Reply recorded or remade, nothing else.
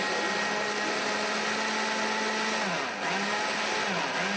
recorded